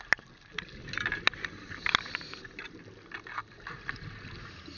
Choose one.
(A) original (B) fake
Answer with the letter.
A